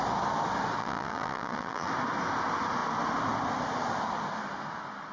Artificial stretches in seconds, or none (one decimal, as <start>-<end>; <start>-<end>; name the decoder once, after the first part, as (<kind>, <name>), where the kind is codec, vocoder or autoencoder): 0.8-1.9 (vocoder, Vocos)